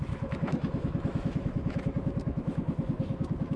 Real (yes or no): no